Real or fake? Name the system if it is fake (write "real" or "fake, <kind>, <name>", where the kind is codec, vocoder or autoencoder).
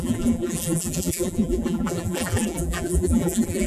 fake, vocoder, BigVGAN v2